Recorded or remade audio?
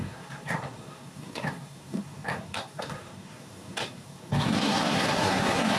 remade